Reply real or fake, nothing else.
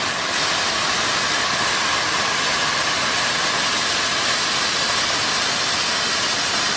real